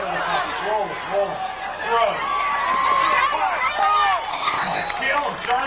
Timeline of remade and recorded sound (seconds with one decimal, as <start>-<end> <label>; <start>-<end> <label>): 0.0-4.3 recorded; 4.3-4.8 remade; 4.8-5.7 recorded